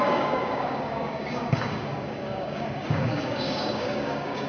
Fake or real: fake